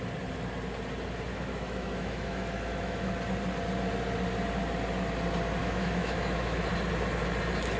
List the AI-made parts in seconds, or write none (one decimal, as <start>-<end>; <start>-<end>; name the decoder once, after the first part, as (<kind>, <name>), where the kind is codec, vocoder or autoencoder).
1.3-3.1 (autoencoder, DAC-VAE); 5.6-6.7